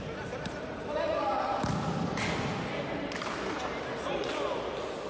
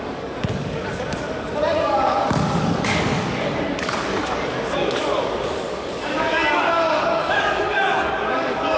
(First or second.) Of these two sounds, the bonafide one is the first